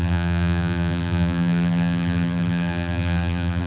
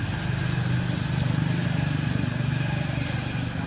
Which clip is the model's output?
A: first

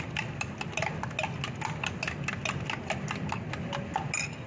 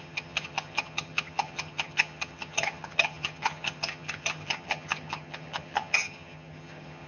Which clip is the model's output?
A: second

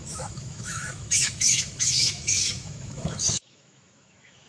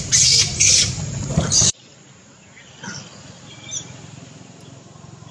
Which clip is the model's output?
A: first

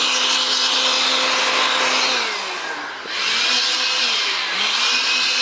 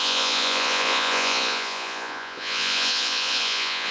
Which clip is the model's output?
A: second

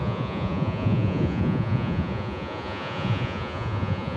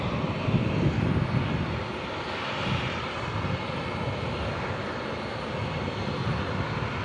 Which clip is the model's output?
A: first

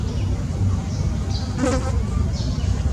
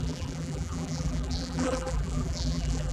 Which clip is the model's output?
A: second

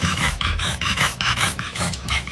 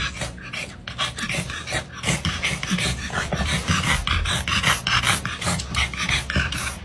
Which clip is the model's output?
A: first